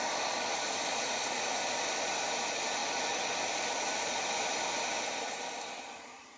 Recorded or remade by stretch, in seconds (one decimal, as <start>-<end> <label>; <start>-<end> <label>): 0.0-0.9 recorded; 0.9-1.6 remade; 1.6-6.4 recorded

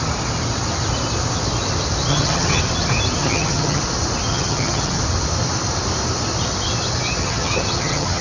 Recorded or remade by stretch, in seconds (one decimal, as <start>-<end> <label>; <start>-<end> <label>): 0.0-2.1 recorded; 2.1-2.6 remade; 2.6-3.2 recorded; 3.2-3.8 remade; 3.8-4.3 recorded; 4.3-5.0 remade; 5.0-7.2 recorded; 7.2-8.2 remade